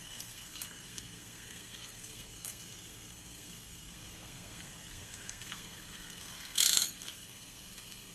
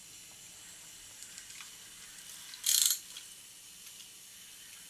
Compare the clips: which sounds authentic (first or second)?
second